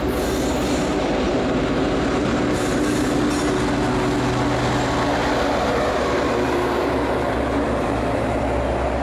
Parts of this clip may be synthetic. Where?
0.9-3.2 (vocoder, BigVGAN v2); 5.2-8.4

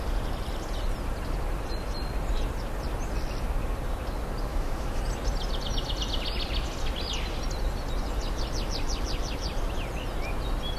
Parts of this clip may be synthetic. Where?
4.5-5.0 (autoencoder, DAC-VAE)

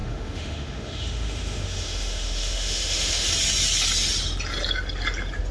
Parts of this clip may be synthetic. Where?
0.0-3.3 (autoencoder, DAC-VAE)

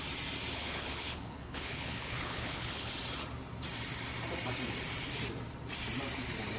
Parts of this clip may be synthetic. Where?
0.5-2.9 (codec, HILCodec)

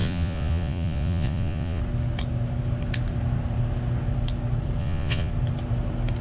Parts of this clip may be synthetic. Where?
0.0-1.8 (vocoder, Vocos); 4.8-5.3

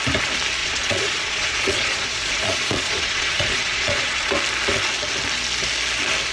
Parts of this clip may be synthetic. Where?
0.6-4.3 (vocoder, Vocos)